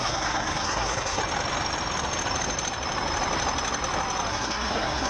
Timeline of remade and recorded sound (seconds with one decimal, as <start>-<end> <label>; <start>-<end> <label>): 0.0-1.2 remade; 1.2-4.3 recorded; 4.3-5.1 remade